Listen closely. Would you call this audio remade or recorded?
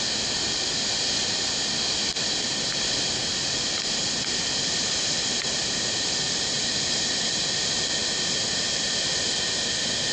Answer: remade